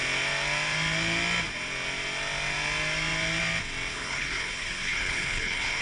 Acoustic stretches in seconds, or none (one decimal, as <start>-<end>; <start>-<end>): 0.0-3.9